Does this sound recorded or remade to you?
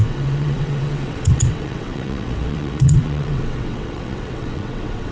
remade